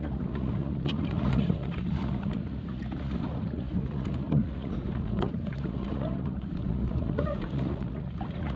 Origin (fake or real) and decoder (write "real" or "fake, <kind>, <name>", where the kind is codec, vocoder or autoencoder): fake, vocoder, Vocos